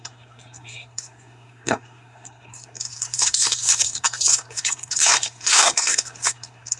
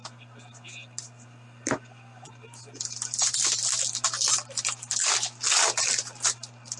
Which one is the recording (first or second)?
second